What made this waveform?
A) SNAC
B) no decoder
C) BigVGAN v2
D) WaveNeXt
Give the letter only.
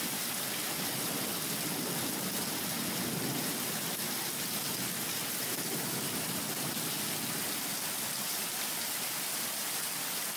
B